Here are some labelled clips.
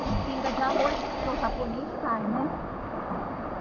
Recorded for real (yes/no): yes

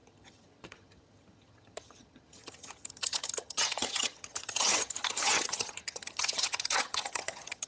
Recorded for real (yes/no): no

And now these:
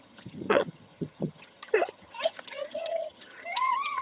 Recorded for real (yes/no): no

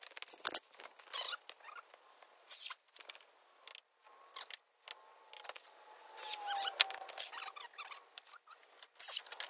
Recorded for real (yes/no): yes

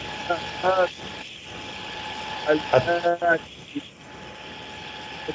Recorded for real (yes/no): yes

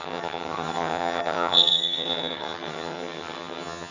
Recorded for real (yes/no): no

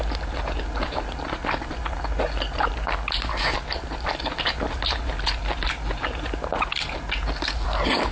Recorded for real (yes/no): yes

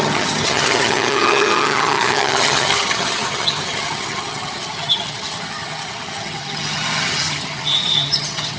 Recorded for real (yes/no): no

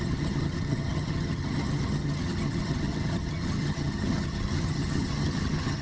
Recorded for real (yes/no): no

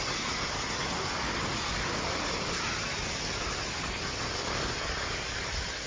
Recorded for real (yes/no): yes